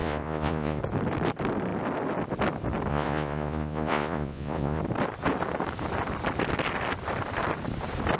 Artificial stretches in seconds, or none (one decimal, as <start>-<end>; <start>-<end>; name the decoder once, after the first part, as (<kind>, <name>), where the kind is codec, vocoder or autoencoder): 0.0-0.8 (vocoder, Vocos); 2.9-4.8